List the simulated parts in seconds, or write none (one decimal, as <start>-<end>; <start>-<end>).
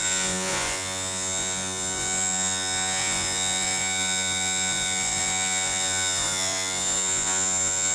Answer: 0.0-7.9